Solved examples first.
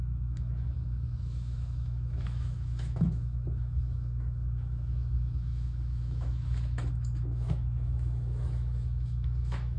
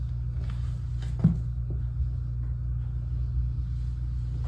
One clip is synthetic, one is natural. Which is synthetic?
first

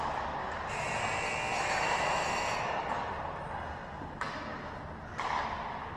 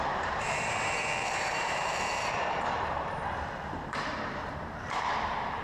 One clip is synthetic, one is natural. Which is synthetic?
second